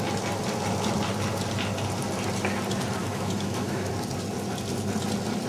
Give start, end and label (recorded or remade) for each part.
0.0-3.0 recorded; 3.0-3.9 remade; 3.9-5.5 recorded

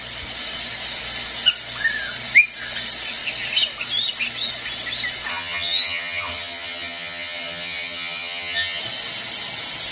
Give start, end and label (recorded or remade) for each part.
0.0-5.3 recorded; 5.3-8.8 remade; 8.8-9.9 recorded

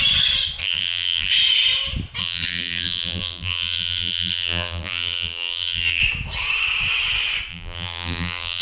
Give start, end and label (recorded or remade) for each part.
0.0-0.6 recorded; 0.6-1.3 remade; 1.3-2.2 recorded; 2.2-6.0 remade; 6.0-7.5 recorded; 7.5-8.6 remade

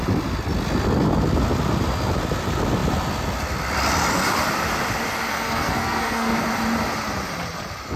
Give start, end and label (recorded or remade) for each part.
0.0-5.3 recorded; 5.3-6.4 remade; 6.4-8.0 recorded